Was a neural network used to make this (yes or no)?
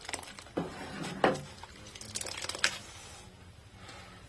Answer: no